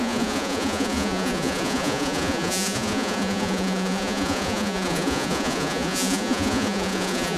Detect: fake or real fake